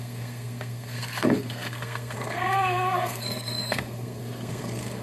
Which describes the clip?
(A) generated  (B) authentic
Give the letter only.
A